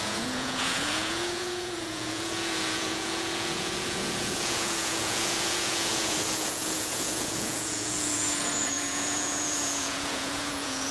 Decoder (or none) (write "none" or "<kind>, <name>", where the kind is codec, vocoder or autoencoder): vocoder, Vocos